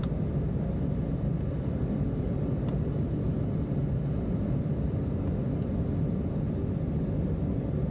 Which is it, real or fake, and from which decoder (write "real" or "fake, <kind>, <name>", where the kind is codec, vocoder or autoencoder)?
real